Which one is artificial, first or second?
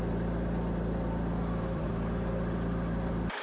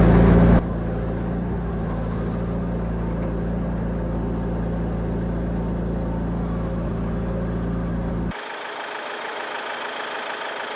first